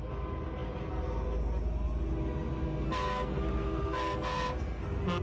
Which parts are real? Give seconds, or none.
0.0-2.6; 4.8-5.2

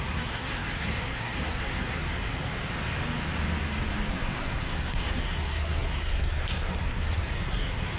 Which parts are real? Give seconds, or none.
2.1-4.1

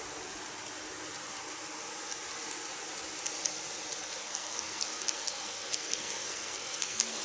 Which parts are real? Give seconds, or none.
0.0-4.2